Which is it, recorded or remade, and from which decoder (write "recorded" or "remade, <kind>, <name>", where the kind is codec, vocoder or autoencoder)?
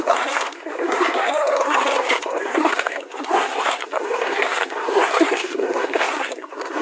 remade, codec, SNAC